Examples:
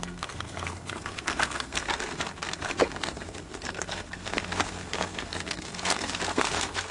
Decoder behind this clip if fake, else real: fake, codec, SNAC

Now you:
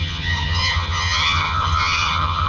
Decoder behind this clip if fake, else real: fake, vocoder, HiFi-GAN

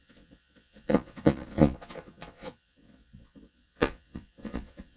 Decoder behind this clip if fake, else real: fake, vocoder, Vocos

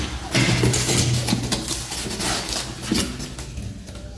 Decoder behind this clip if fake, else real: real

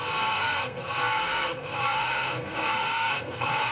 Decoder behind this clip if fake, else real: fake, codec, SNAC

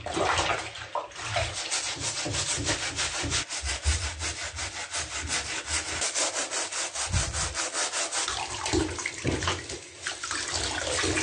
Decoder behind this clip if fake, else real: real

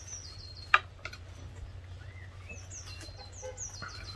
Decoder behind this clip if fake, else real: real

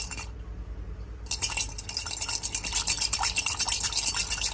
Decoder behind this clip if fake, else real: real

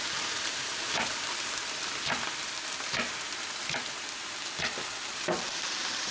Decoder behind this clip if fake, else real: fake, vocoder, BigVGAN v2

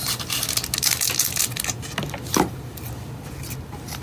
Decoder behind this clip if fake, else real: real